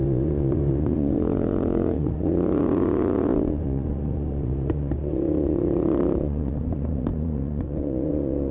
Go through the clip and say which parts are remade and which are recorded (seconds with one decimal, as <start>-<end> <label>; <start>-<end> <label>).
0.0-8.5 remade

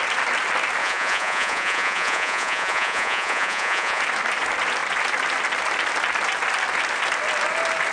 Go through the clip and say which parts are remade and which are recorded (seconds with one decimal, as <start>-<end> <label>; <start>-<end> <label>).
0.0-0.8 recorded; 0.8-4.0 remade; 4.0-7.9 recorded

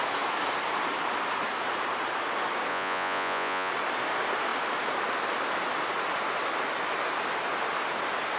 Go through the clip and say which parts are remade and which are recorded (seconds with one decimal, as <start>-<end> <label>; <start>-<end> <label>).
0.0-2.7 recorded; 2.7-3.7 remade; 3.7-8.4 recorded

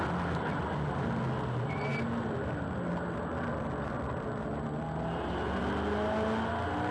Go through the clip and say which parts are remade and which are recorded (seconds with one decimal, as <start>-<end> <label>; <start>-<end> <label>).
0.0-6.9 recorded

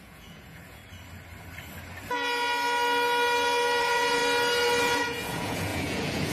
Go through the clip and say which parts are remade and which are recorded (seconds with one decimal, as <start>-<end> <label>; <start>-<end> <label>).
0.0-0.8 remade; 0.8-3.8 recorded; 3.8-4.2 remade; 4.2-4.8 recorded; 4.8-6.3 remade